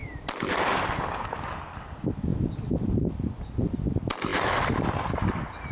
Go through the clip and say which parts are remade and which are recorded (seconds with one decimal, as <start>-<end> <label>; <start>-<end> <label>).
0.0-0.6 remade; 0.6-2.3 recorded; 2.3-3.7 remade; 3.7-5.7 recorded